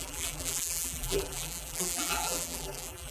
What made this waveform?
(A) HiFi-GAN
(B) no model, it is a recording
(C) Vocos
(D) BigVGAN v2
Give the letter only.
D